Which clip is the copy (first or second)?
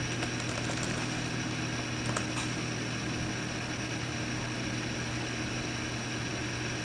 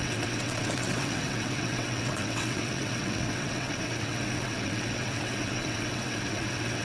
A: second